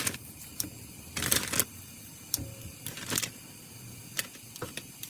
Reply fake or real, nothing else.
fake